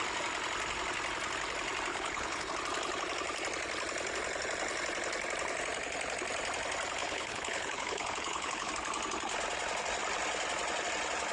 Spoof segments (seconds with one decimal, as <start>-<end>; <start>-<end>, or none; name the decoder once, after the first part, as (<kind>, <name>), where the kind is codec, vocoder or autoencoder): 1.9-2.5 (codec, HILCodec); 7.0-8.7

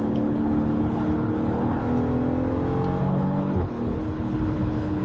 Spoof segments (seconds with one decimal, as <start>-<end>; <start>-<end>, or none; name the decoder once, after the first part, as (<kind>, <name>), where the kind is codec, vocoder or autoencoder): 0.0-1.8 (codec, HILCodec); 3.0-5.0

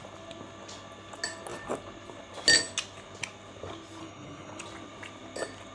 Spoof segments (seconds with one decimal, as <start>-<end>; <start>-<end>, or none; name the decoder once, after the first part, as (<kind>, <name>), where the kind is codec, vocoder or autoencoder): 4.0-4.6 (codec, HILCodec)

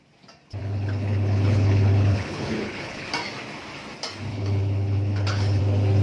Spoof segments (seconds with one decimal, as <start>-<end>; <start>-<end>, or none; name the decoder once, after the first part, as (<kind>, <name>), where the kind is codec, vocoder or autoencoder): 0.6-3.1 (codec, HILCodec); 4.3-5.6

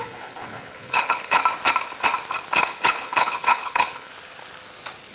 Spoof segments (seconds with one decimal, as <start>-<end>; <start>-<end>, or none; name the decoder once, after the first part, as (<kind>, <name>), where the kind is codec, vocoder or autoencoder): 0.0-1.4 (codec, HILCodec); 2.6-4.1

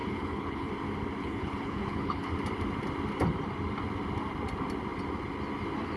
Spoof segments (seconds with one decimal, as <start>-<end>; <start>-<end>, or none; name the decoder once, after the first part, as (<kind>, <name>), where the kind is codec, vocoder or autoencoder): 0.0-0.7 (codec, HILCodec); 1.2-2.3